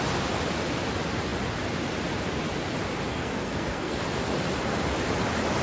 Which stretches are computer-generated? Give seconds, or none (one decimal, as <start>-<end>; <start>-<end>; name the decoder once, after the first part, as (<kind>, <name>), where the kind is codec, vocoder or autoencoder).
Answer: 3.1-4.0 (codec, SNAC)